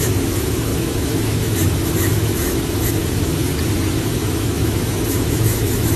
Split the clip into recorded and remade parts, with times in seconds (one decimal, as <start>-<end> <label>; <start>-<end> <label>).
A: 0.0-3.5 remade; 3.5-4.0 recorded; 4.0-6.0 remade